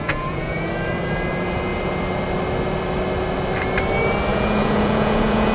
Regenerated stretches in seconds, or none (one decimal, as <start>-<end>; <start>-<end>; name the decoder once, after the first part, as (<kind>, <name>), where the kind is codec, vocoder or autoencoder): 0.0-0.7 (vocoder, Vocos); 4.3-5.5